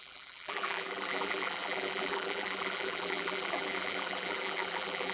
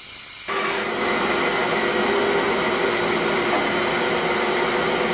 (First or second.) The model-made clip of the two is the first